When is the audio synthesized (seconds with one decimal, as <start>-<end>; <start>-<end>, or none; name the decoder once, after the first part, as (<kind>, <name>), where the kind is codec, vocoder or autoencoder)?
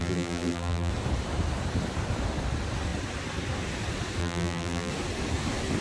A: 0.0-0.9 (vocoder, BigVGAN v2); 4.2-4.9